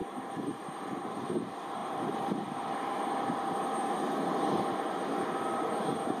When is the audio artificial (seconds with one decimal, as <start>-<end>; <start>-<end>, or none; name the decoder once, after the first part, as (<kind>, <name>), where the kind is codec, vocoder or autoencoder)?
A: 0.0-0.6 (vocoder, BigVGAN v2)